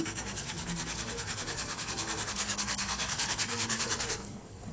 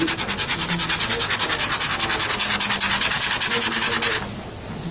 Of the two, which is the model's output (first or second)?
first